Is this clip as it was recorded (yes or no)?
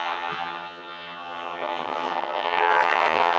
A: no